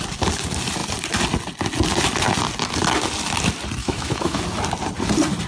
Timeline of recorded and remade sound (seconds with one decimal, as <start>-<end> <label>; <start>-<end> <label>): 0.0-3.8 recorded; 3.8-4.4 remade; 4.4-5.5 recorded